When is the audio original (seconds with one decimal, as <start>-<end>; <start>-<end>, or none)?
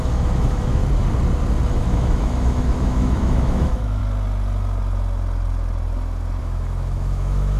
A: 0.8-1.7; 4.0-6.4